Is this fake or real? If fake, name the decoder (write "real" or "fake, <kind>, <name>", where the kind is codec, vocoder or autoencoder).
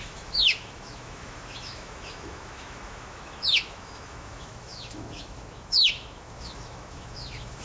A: fake, autoencoder, DAC-VAE